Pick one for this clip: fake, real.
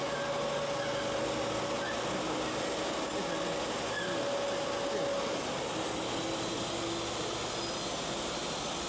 real